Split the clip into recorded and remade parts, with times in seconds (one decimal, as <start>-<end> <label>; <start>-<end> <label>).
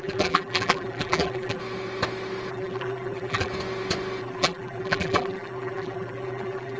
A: 0.0-1.6 remade; 1.6-2.5 recorded; 2.5-3.5 remade; 3.5-4.2 recorded; 4.2-6.8 remade